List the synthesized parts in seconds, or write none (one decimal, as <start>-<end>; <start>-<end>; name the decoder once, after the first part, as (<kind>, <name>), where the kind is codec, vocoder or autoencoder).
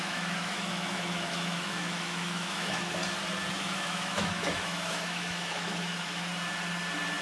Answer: 0.0-3.0 (autoencoder, DAC-VAE); 3.5-6.3